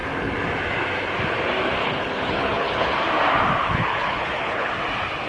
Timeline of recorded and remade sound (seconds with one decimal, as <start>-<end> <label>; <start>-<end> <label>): 0.0-1.8 recorded; 1.8-3.0 remade; 3.0-3.6 recorded; 3.6-4.7 remade; 4.7-5.3 recorded